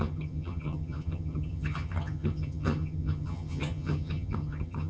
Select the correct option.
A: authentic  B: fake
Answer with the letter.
B